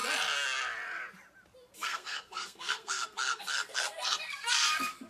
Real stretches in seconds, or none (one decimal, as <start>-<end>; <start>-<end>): 0.0-1.8